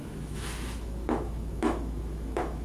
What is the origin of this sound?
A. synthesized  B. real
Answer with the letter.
A